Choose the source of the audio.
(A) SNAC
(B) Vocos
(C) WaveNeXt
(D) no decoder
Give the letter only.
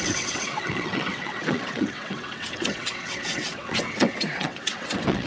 C